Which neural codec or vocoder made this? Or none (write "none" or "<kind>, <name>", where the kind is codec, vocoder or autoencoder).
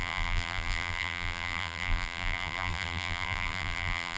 vocoder, BigVGAN v2